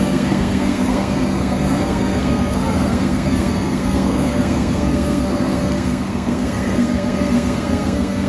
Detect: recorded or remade remade